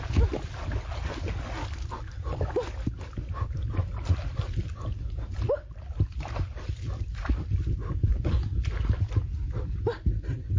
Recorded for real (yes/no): yes